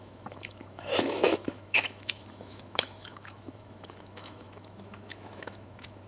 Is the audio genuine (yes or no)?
no